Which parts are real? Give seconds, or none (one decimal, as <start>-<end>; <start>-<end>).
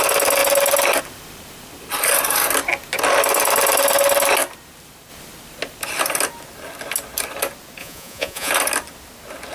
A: 0.0-7.8; 8.5-9.5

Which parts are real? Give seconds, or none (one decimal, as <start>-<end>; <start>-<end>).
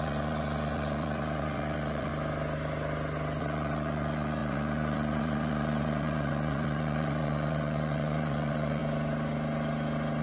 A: 2.1-3.4; 8.8-10.2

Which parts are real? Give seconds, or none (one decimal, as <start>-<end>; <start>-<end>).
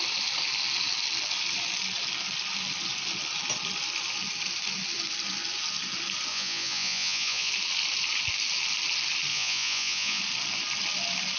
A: 0.0-6.3; 7.5-9.3; 10.2-11.4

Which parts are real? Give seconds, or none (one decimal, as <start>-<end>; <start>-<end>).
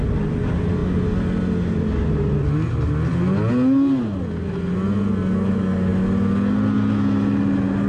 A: 0.0-7.9